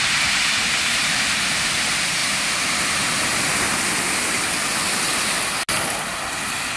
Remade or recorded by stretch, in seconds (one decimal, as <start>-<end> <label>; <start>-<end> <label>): 0.0-0.6 recorded; 0.6-1.3 remade; 1.3-6.8 recorded